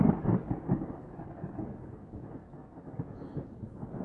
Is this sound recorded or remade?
remade